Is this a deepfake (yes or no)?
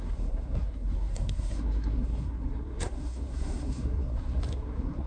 yes